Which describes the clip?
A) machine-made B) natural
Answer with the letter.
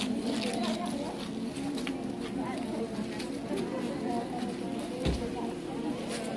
B